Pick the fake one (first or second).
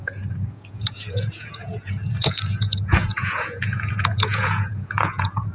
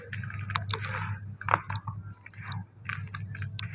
first